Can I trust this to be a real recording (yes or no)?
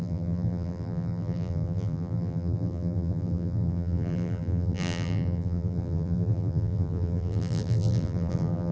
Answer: no